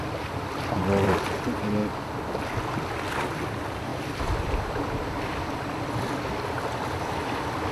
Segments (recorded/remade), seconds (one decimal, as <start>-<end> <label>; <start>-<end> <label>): 0.0-1.8 remade; 1.8-3.2 recorded; 3.2-7.7 remade